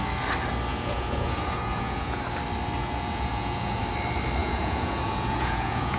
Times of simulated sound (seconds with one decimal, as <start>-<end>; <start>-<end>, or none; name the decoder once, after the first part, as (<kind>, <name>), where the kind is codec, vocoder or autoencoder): 0.7-2.2 (vocoder, Vocos); 2.8-3.8; 4.4-6.0